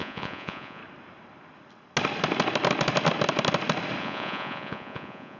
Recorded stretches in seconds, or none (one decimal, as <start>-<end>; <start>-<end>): 0.8-4.0